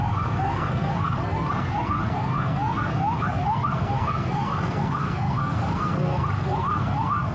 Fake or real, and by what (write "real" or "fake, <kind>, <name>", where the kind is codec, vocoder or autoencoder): fake, codec, SNAC